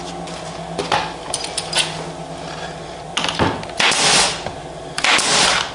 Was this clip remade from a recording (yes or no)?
no